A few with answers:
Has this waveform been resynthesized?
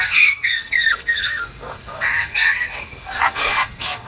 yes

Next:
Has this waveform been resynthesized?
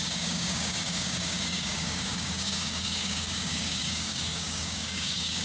yes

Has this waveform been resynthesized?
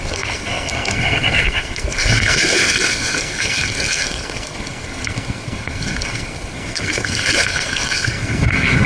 yes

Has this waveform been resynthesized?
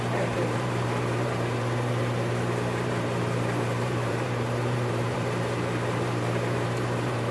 yes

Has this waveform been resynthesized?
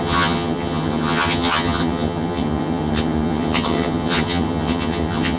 yes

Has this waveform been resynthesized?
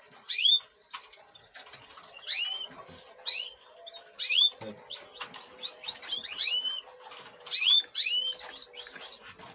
no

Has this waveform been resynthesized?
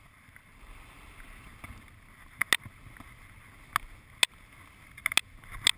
no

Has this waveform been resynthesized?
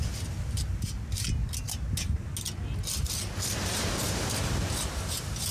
no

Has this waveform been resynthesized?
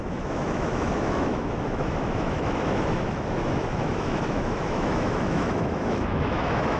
yes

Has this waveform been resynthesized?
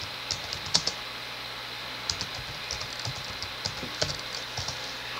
no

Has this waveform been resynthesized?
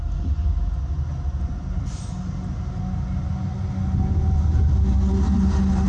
no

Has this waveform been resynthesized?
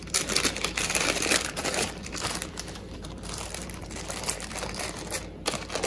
yes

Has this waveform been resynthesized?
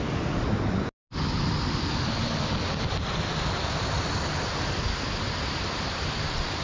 no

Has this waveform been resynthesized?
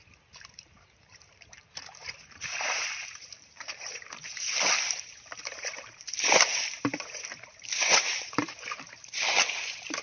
yes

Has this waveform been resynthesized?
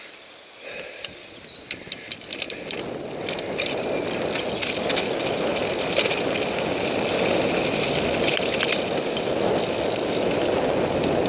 no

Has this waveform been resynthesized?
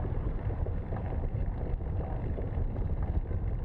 yes